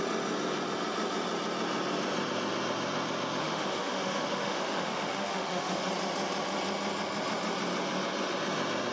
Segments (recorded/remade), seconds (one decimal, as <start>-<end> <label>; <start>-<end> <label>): 0.0-3.4 recorded; 3.4-5.9 remade; 5.9-8.9 recorded